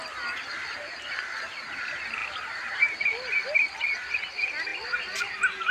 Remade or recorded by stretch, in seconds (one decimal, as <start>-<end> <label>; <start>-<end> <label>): 0.0-2.2 recorded; 2.2-3.0 remade; 3.0-5.7 recorded